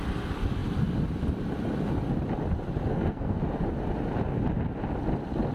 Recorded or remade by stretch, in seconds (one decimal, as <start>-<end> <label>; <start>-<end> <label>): 0.0-2.9 recorded; 2.9-3.4 remade; 3.4-5.5 recorded